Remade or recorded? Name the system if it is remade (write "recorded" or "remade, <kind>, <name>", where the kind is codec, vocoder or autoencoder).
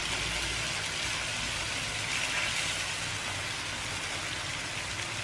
recorded